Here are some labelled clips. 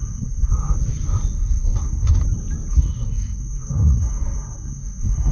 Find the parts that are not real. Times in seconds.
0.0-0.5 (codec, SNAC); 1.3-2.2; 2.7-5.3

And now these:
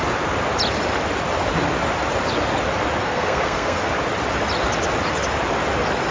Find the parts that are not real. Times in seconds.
3.0-3.9 (codec, SNAC)

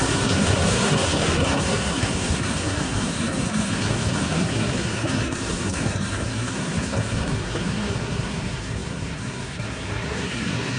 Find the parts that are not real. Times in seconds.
0.0-10.8 (codec, SNAC)

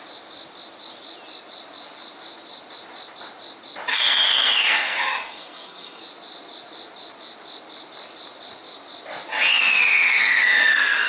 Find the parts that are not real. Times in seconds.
3.9-6.0 (codec, SNAC); 9.5-11.1

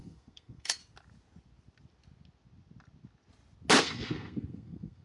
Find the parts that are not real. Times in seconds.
0.0-0.8 (codec, SNAC); 3.8-5.0

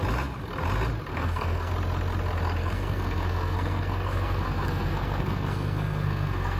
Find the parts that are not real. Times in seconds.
1.1-1.7 (codec, SNAC); 2.6-6.6